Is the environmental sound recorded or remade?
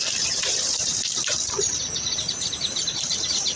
remade